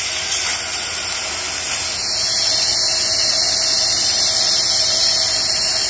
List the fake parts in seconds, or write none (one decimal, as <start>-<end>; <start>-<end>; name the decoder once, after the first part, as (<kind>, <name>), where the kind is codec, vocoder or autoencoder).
none

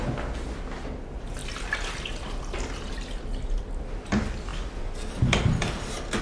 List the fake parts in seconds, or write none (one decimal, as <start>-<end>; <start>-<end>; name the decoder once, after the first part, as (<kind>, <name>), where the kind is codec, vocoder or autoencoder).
none

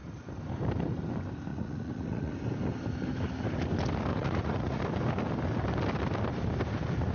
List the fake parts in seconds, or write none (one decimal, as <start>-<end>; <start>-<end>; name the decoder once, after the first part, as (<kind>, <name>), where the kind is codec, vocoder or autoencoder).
1.5-2.3 (vocoder, Vocos); 4.1-4.8

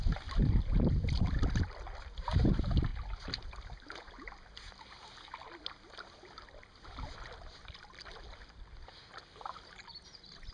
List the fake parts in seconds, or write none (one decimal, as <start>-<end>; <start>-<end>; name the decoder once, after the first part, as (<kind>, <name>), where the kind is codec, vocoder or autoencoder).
none

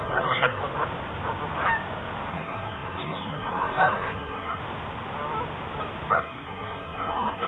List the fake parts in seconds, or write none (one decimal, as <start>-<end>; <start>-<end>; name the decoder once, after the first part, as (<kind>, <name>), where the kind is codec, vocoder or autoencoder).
0.0-0.6 (codec, SNAC); 2.3-4.6; 6.1-7.5

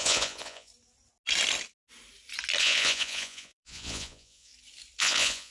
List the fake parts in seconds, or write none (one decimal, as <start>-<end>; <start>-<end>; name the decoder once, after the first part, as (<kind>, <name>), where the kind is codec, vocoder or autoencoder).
0.0-0.7 (vocoder, Vocos); 2.6-4.5; 5.0-5.5

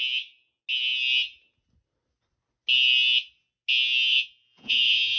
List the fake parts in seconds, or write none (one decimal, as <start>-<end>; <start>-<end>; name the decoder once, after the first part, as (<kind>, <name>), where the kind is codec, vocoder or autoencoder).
4.1-5.2 (vocoder, Vocos)

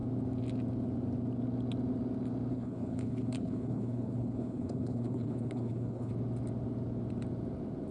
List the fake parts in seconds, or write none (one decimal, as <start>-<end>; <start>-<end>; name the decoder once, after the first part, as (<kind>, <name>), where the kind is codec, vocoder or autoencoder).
2.5-6.1 (codec, HILCodec)